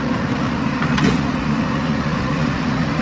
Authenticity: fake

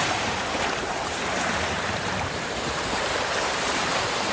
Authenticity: fake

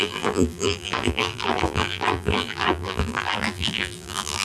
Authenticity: fake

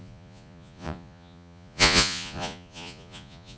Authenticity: fake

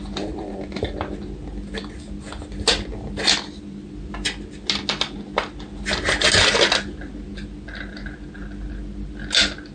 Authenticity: real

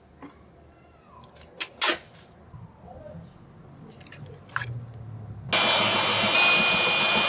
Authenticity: real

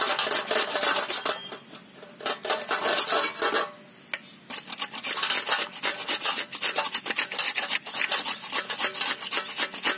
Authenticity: real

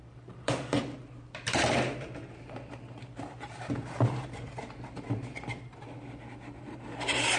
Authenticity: fake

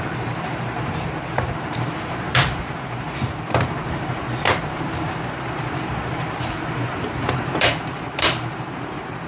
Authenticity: fake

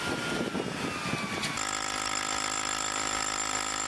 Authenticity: real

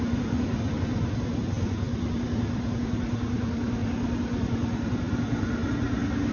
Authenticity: real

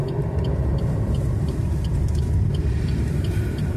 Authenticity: fake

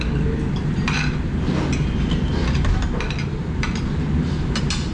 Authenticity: real